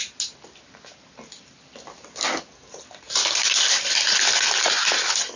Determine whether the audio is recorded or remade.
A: recorded